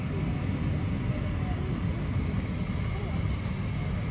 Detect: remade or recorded recorded